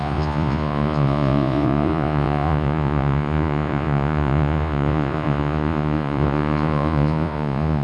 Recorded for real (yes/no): no